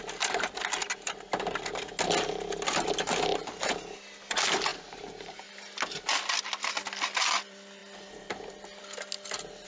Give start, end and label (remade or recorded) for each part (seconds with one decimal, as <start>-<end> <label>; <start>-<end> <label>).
0.0-4.7 recorded; 4.7-5.5 remade; 5.5-7.8 recorded; 7.8-8.8 remade; 8.8-9.7 recorded